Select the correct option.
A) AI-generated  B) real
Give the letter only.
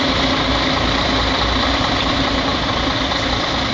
A